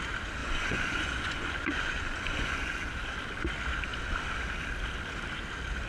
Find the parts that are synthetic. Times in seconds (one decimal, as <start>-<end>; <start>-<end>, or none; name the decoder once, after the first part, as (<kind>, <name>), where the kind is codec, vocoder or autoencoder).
0.4-2.9 (vocoder, Vocos)